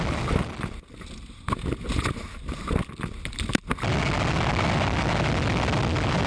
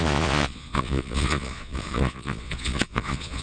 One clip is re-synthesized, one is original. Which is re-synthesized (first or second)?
second